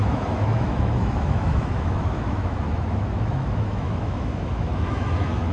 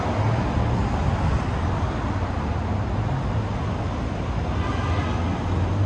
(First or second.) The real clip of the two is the second